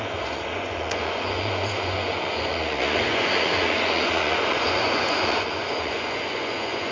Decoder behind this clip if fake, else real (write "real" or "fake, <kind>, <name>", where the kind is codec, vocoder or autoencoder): fake, vocoder, Vocos